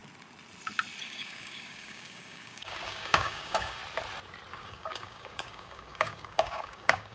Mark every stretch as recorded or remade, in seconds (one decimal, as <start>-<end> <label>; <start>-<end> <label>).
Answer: 0.0-1.0 recorded; 1.0-3.8 remade; 3.8-4.5 recorded; 4.5-7.1 remade